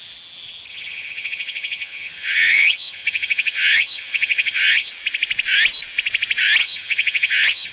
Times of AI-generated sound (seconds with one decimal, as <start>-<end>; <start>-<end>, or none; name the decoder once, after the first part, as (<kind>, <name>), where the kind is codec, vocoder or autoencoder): 0.7-4.9 (vocoder, HiFi-GAN); 6.6-7.7